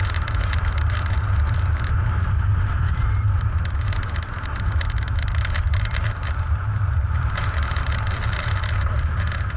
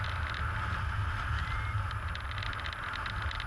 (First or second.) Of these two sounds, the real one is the second